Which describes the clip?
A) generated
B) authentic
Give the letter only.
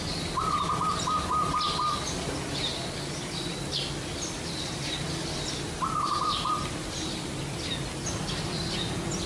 B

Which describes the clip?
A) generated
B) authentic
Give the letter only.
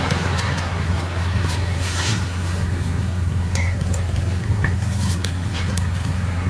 A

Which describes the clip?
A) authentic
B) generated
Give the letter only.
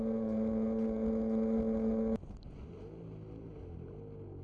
A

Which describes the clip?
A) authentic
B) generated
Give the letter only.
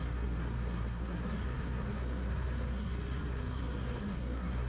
B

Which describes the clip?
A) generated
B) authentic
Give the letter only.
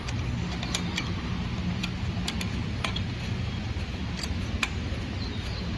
B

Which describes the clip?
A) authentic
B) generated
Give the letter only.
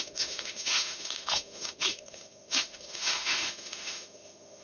B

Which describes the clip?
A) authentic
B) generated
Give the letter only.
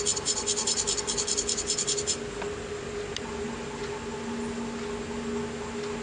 A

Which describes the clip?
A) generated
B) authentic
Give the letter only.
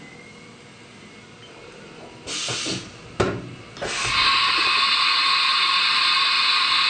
B